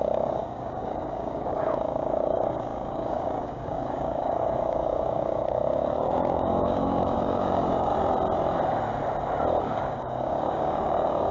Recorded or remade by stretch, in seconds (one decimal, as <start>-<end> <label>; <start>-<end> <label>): 0.0-7.9 remade; 7.9-9.6 recorded; 9.6-11.3 remade